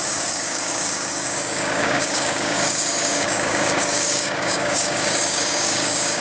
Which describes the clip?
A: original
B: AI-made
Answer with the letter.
B